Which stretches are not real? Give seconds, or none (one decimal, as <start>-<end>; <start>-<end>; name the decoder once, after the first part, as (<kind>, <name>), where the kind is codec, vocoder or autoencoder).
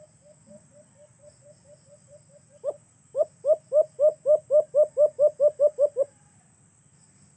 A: none